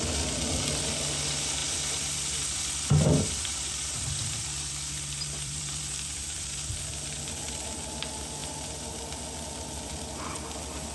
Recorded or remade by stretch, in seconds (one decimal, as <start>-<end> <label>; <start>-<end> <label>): 0.0-1.6 recorded; 1.6-6.7 remade; 6.7-8.4 recorded; 8.4-9.0 remade; 9.0-10.9 recorded